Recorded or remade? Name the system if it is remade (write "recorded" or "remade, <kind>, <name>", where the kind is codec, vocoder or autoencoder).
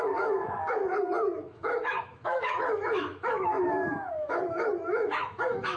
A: remade, autoencoder, DAC-VAE